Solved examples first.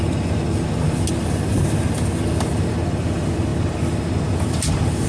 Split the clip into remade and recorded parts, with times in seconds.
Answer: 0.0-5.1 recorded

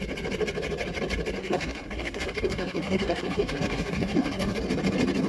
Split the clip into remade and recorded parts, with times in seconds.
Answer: 0.0-1.4 recorded; 1.4-4.6 remade; 4.6-5.3 recorded

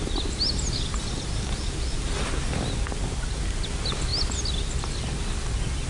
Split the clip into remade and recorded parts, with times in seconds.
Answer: 0.0-5.9 recorded

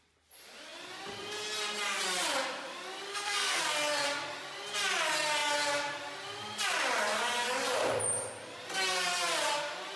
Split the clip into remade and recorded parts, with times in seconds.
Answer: 0.0-3.1 recorded; 3.1-3.6 remade; 3.6-10.0 recorded

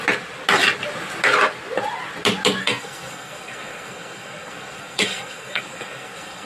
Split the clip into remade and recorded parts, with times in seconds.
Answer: 0.0-2.6 recorded; 2.6-6.5 remade